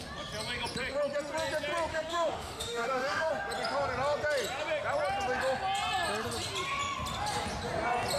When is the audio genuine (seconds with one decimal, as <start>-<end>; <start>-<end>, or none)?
0.0-1.9; 3.3-8.2